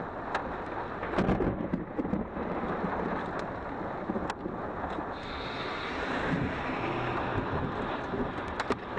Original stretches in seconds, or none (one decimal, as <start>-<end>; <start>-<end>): 0.0-9.0